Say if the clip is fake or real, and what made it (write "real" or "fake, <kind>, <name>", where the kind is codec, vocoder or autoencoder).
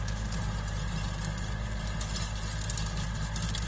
real